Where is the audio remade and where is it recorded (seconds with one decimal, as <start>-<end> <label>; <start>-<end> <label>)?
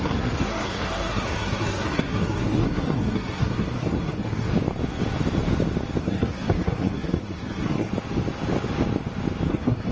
0.0-4.5 remade; 4.5-6.0 recorded; 6.0-7.9 remade; 7.9-9.5 recorded; 9.5-9.9 remade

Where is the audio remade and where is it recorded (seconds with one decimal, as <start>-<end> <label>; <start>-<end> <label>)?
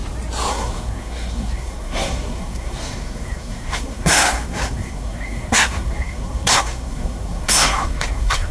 0.0-0.5 recorded; 0.5-8.5 remade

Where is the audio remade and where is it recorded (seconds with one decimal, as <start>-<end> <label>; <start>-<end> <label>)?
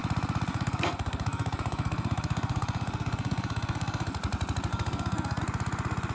0.0-0.5 recorded; 0.5-4.2 remade; 4.2-4.7 recorded; 4.7-5.4 remade; 5.4-6.1 recorded